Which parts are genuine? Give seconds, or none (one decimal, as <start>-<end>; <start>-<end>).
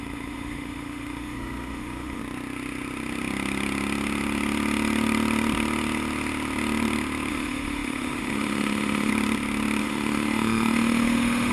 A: 2.2-7.3; 9.1-9.8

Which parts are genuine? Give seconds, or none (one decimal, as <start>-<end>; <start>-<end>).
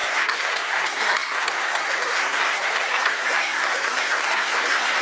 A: none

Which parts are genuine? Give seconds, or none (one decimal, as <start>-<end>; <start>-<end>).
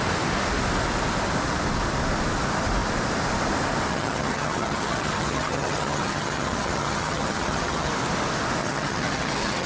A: 0.0-3.9; 7.9-8.6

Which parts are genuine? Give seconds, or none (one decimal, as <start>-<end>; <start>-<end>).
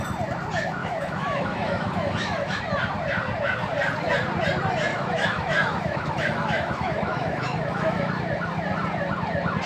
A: 0.0-0.8; 2.6-4.9; 8.1-9.7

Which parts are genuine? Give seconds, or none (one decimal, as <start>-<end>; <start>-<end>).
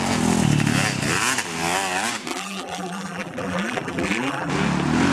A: 0.0-2.3; 4.5-5.1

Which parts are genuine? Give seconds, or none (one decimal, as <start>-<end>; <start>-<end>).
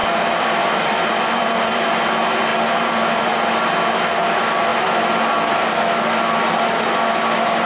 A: 1.9-2.5; 3.2-7.7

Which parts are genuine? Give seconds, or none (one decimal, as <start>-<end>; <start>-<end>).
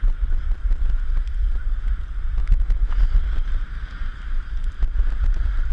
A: 0.0-2.4; 3.0-5.7